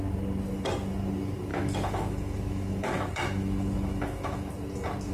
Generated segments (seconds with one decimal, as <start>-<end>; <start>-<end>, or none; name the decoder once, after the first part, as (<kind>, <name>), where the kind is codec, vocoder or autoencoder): 1.5-4.5 (autoencoder, DAC-VAE)